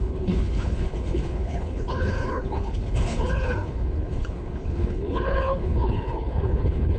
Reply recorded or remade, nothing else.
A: remade